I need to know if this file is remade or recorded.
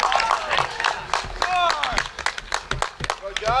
recorded